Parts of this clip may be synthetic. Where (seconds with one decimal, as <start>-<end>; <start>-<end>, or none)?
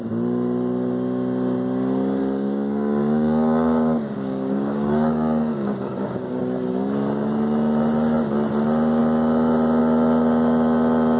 2.2-6.4